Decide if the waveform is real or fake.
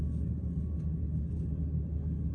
real